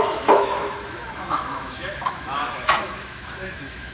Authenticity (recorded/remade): remade